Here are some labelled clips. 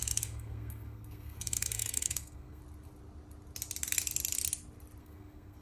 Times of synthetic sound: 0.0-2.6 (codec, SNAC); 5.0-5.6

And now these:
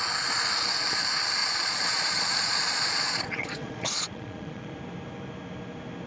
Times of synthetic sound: 1.4-4.7 (vocoder, Vocos)